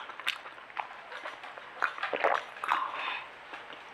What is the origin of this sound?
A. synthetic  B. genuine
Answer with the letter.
B